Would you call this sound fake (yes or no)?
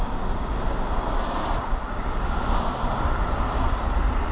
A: no